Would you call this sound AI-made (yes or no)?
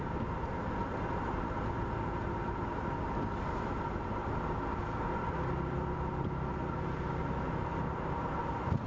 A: no